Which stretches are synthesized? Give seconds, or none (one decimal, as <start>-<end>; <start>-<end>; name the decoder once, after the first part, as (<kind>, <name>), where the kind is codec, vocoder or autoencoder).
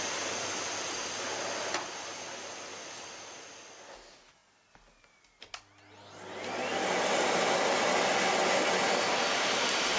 none